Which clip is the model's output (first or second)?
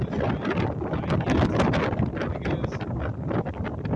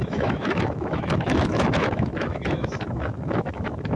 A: second